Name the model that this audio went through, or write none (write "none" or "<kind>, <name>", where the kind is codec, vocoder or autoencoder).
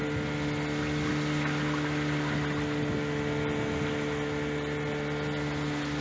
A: none